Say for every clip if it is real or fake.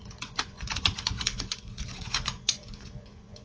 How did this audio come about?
fake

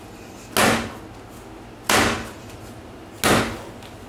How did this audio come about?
real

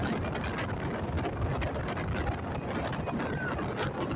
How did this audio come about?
real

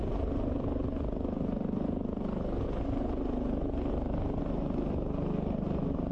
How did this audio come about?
real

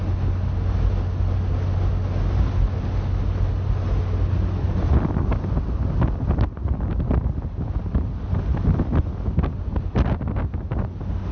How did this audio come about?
real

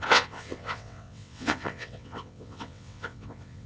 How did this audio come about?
fake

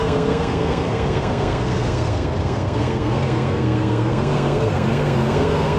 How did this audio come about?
fake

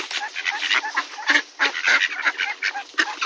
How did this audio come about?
real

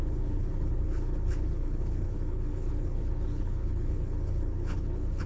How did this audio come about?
fake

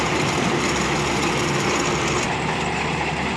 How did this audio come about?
real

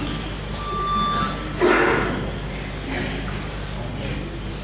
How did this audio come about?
real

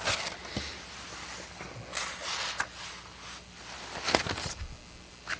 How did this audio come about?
real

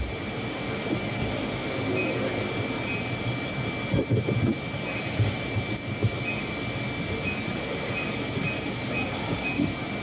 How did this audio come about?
real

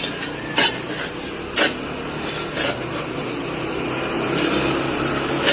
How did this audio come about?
real